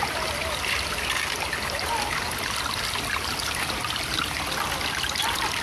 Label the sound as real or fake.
real